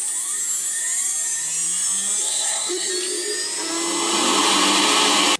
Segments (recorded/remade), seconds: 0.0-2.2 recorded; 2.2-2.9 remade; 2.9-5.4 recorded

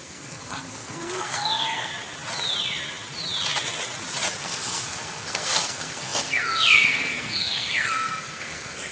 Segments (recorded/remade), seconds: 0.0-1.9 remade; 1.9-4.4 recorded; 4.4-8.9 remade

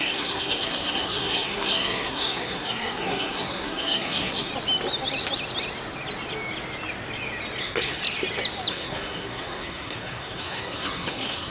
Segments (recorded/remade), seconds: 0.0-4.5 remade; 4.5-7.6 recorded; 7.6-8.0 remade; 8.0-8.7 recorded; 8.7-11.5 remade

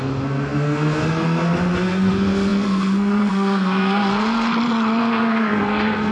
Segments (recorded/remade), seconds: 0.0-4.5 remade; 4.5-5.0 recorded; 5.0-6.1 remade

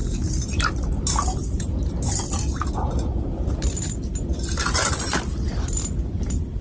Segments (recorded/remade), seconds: 0.0-6.6 recorded

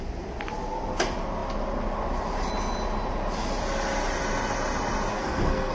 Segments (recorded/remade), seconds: 0.0-5.1 recorded; 5.1-5.7 remade

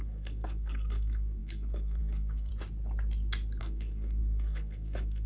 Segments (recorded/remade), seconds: 0.0-2.5 remade; 2.5-3.6 recorded; 3.6-5.3 remade